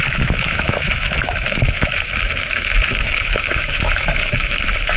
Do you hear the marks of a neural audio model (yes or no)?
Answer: yes